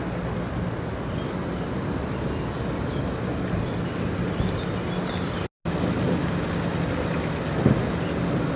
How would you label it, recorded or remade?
recorded